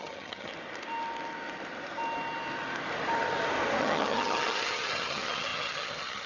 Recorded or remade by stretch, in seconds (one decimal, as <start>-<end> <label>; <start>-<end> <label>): 0.0-0.5 remade; 0.5-3.8 recorded; 3.8-6.3 remade